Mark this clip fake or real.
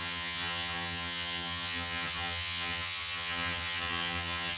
fake